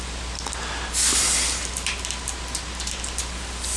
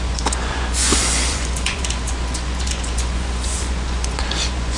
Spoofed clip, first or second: second